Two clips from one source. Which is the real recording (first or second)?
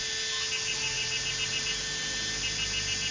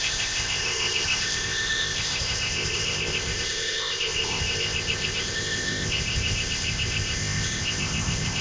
first